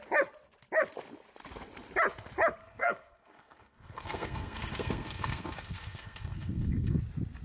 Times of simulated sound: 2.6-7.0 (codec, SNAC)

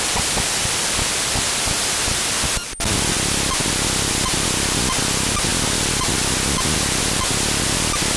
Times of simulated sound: none